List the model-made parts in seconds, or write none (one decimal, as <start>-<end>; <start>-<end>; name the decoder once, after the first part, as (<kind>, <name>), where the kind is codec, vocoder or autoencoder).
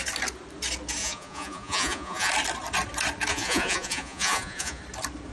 1.0-2.3 (vocoder, Vocos); 3.3-4.8